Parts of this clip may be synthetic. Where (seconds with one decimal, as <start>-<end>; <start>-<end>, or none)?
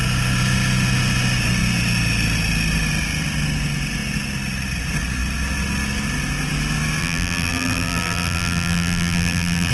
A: 7.0-9.7